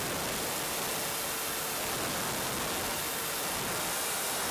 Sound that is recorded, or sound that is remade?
recorded